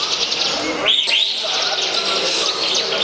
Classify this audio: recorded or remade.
recorded